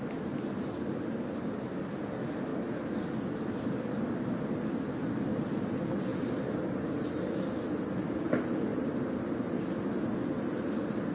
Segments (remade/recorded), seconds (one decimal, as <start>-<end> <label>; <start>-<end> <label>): 0.0-11.1 recorded